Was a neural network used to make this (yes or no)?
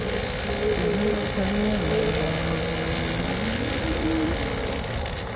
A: no